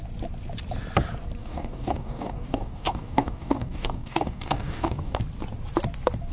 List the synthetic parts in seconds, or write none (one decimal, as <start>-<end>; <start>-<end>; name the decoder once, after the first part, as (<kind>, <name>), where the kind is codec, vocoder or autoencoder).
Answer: 1.4-5.2 (codec, DAC)